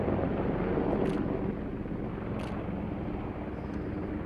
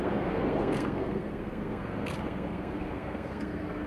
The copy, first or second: second